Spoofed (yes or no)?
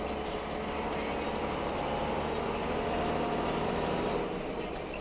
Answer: no